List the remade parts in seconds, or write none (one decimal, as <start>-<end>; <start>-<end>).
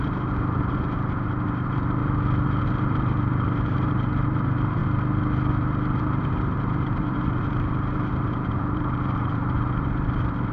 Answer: 0.0-2.0; 2.6-4.8; 6.2-10.5